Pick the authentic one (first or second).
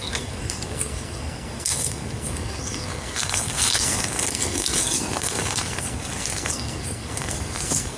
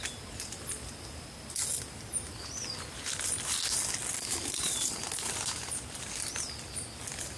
second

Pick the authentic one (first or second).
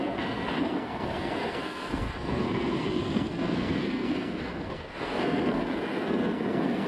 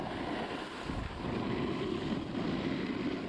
second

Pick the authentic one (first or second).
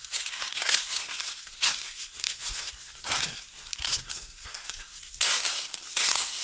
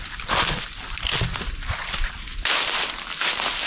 second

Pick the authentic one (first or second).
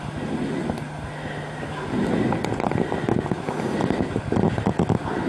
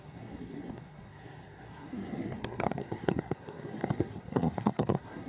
first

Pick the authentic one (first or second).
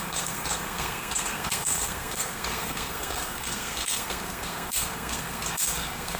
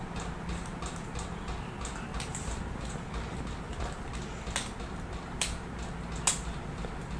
second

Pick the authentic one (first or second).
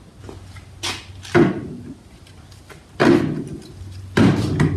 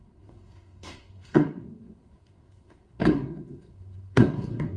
first